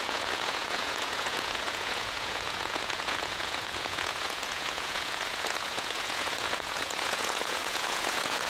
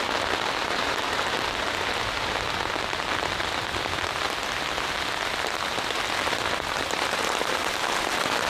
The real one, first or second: second